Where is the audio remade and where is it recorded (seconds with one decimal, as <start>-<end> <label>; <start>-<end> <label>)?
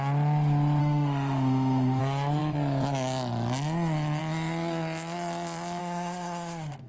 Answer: 0.0-0.8 recorded; 0.8-2.0 remade; 2.0-5.8 recorded; 5.8-6.9 remade